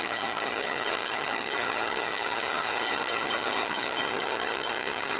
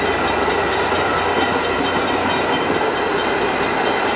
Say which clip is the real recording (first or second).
second